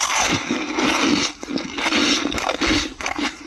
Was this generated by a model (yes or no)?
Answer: no